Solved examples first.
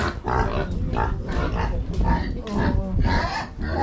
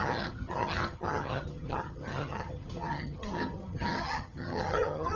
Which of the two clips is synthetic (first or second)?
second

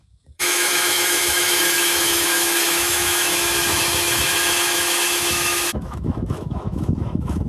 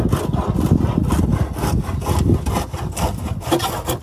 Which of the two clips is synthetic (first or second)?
first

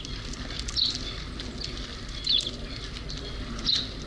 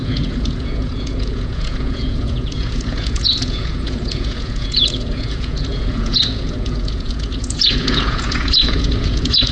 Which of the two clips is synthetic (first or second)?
second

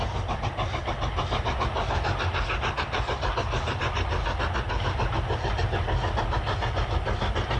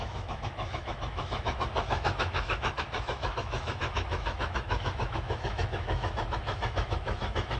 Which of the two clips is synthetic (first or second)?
second